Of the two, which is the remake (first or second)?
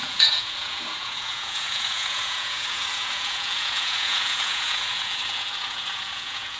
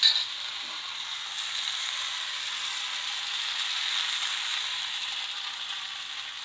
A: first